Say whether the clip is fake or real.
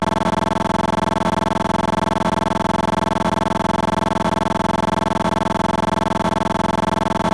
real